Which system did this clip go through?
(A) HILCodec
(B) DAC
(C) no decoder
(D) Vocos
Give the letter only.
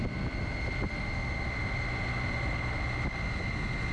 C